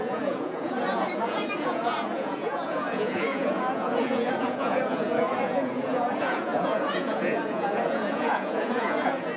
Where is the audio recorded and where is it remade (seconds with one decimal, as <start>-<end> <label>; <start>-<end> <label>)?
0.0-9.4 remade

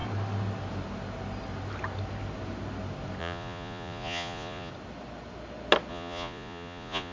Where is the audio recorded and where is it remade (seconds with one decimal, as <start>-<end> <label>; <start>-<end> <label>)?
0.0-3.2 recorded; 3.2-4.7 remade; 4.7-5.9 recorded; 5.9-7.1 remade

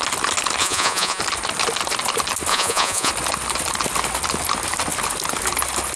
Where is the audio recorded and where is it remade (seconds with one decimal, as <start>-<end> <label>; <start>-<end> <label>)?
0.0-0.6 recorded; 0.6-1.2 remade; 1.2-2.5 recorded; 2.5-3.1 remade; 3.1-6.0 recorded

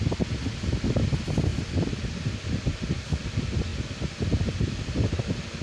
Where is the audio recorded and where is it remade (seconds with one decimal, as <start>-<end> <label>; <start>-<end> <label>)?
0.0-5.6 recorded

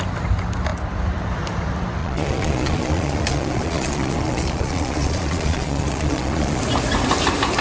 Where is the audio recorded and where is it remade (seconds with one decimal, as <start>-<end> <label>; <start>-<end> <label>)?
0.0-2.0 recorded; 2.0-6.6 remade; 6.6-7.6 recorded

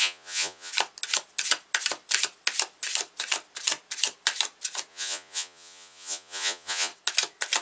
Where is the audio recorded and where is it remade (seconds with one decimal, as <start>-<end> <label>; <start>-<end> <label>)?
0.0-0.7 remade; 0.7-4.9 recorded; 4.9-6.9 remade; 6.9-7.6 recorded

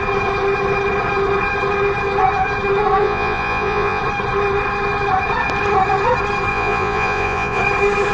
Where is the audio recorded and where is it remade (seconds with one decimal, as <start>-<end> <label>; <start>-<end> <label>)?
0.0-3.0 recorded; 3.0-4.0 remade; 4.0-6.5 recorded; 6.5-7.6 remade; 7.6-8.1 recorded